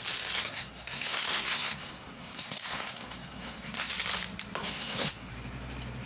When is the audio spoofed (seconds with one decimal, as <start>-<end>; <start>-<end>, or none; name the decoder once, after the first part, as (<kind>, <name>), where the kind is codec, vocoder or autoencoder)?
0.4-3.9 (codec, SNAC); 4.6-5.3